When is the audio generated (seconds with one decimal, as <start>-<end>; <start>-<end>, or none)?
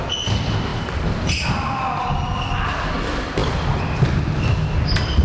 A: none